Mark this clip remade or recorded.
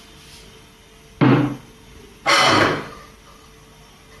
recorded